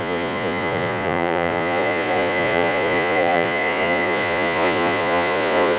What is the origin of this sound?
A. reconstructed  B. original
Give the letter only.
A